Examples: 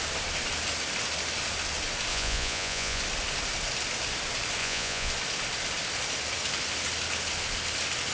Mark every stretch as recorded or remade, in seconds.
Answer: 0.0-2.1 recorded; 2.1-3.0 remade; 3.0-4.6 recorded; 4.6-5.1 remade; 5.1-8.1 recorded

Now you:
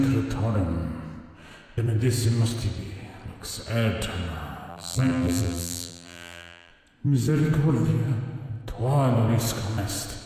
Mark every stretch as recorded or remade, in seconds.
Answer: 0.0-4.7 recorded; 4.7-6.7 remade; 6.7-10.3 recorded

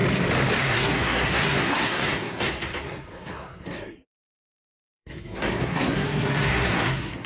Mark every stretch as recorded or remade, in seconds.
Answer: 0.0-0.6 recorded; 0.6-7.3 remade

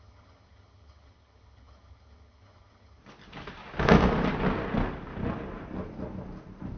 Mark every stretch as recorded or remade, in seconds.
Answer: 0.0-3.0 remade; 3.0-6.8 recorded

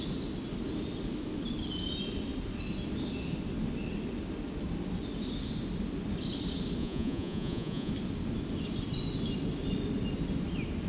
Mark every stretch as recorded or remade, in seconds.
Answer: 0.0-6.8 recorded; 6.8-7.9 remade; 7.9-10.9 recorded

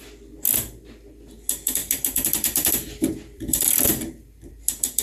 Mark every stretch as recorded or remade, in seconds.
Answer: 0.0-1.8 recorded; 1.8-4.5 remade; 4.5-5.0 recorded

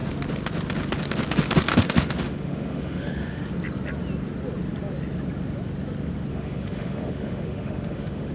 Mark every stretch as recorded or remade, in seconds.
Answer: 0.0-1.7 recorded; 1.7-3.5 remade; 3.5-6.3 recorded; 6.3-8.3 remade